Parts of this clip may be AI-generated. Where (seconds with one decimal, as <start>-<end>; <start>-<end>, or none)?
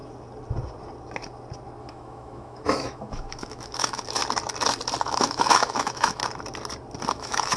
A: 1.8-4.2; 5.0-6.2; 7.1-7.6